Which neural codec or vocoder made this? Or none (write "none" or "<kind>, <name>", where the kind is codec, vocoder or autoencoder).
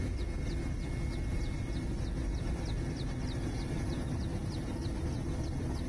none